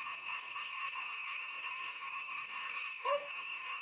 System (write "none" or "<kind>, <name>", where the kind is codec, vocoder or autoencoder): codec, DAC